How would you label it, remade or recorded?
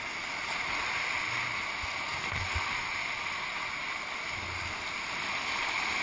recorded